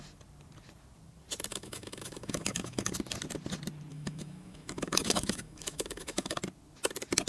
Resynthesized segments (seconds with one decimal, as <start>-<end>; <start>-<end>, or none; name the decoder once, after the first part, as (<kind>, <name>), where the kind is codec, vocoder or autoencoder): 1.5-2.9 (autoencoder, DAC-VAE); 3.9-6.4